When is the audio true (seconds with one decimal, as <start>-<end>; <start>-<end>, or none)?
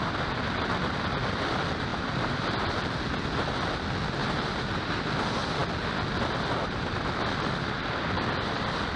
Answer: 0.0-1.9; 2.6-4.2; 5.0-9.0